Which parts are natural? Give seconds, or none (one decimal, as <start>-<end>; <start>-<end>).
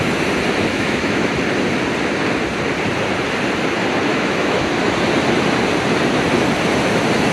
0.0-0.7; 1.3-4.1; 4.7-7.3